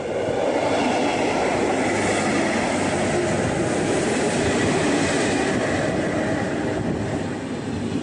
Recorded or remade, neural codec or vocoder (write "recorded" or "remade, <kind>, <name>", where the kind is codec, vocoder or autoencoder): recorded